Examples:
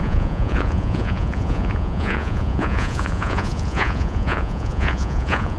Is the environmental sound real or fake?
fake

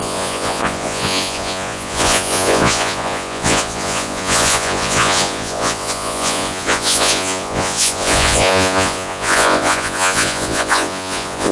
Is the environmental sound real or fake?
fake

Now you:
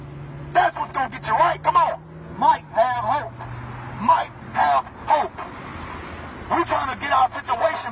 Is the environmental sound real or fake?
real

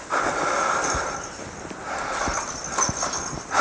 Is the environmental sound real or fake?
real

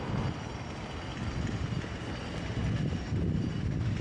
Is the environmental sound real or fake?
real